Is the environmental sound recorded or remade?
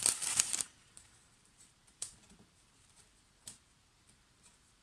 remade